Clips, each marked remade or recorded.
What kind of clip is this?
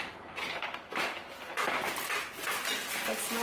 recorded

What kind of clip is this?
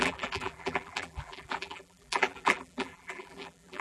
remade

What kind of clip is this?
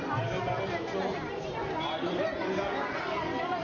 recorded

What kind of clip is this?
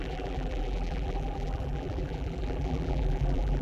remade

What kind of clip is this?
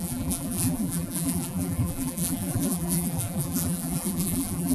remade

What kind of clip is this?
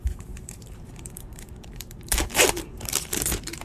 remade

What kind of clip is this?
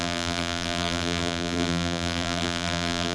remade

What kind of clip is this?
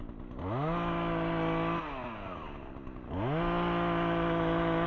recorded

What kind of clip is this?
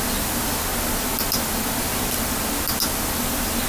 recorded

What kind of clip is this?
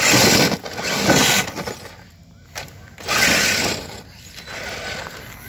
recorded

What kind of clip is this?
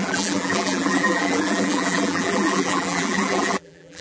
remade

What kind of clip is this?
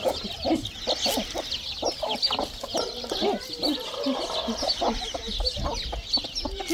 recorded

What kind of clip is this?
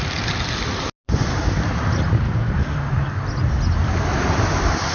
recorded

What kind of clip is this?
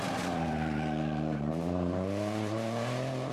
remade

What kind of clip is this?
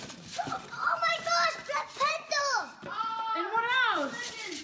remade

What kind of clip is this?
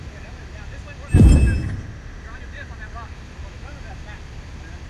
recorded